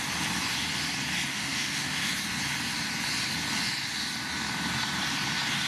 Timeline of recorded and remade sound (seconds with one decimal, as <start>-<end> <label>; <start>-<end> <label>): 0.0-1.3 recorded; 1.3-2.1 remade; 2.1-5.7 recorded